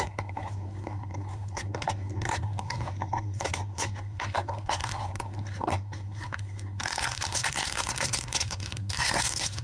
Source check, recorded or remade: remade